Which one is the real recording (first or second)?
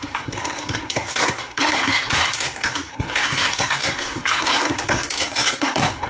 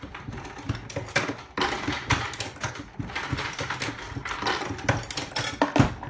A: second